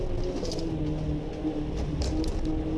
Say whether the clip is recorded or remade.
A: recorded